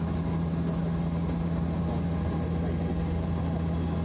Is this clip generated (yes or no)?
no